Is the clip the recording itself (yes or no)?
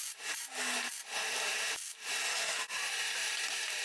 yes